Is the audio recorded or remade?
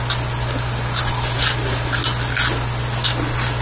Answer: recorded